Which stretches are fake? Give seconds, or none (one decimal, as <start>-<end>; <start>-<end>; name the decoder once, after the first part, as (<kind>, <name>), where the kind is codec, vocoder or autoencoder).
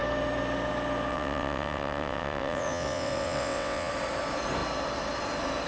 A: 1.1-3.9 (vocoder, WaveNeXt)